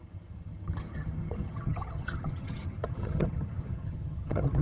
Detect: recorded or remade remade